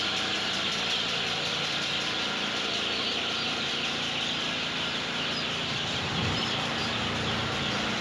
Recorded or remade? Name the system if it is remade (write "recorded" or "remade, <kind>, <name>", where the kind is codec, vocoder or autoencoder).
recorded